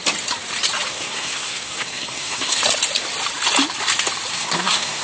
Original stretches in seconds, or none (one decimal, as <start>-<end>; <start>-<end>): 0.0-0.9; 2.6-4.3